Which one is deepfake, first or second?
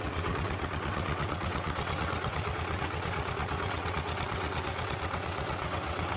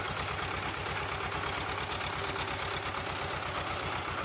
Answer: first